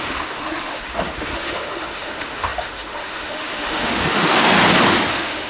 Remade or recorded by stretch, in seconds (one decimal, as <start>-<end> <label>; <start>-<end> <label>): 0.0-4.5 remade; 4.5-5.1 recorded; 5.1-5.5 remade